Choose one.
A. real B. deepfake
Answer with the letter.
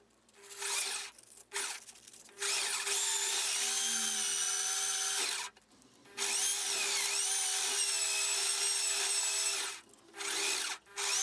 A